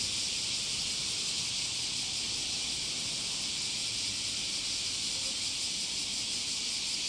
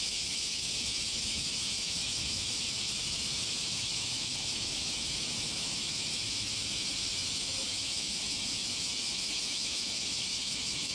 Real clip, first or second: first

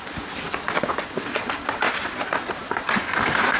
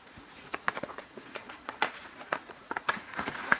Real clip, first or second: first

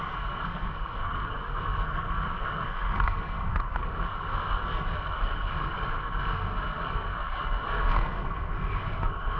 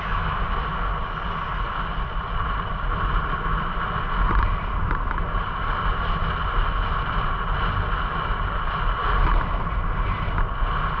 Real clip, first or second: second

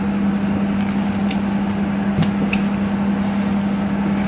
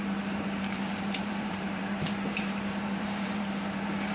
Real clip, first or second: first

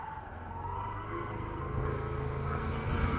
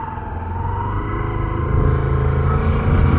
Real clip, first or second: second